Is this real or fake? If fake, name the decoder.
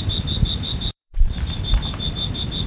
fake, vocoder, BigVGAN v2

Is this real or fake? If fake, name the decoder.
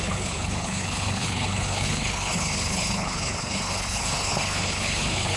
fake, codec, HILCodec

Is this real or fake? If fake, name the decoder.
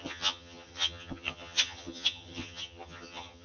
fake, vocoder, HiFi-GAN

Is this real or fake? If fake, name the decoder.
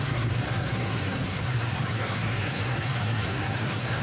fake, codec, SNAC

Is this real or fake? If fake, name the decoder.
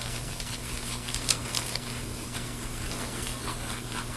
fake, codec, SNAC